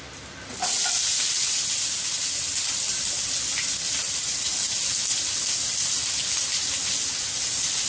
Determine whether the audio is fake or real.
real